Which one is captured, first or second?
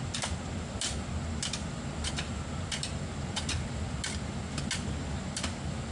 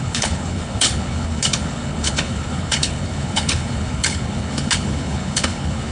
first